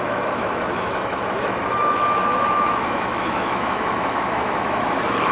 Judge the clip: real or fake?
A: fake